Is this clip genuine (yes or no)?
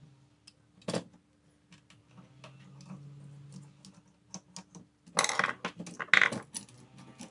yes